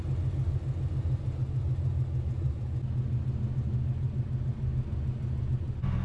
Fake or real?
real